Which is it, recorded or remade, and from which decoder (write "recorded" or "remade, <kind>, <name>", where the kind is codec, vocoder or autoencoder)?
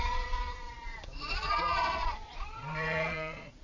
remade, vocoder, Vocos